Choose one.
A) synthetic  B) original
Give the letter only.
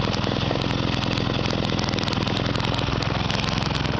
B